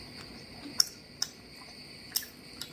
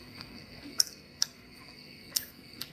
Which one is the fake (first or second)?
second